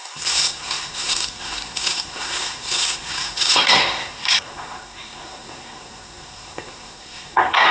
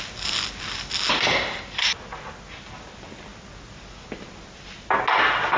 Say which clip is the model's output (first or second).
first